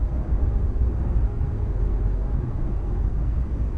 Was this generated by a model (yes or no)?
yes